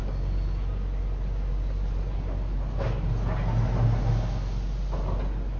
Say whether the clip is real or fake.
real